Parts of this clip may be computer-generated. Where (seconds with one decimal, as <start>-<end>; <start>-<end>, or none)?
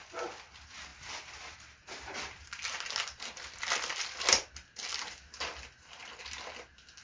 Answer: none